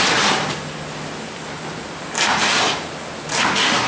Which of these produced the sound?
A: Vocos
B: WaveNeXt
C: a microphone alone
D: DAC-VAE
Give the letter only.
C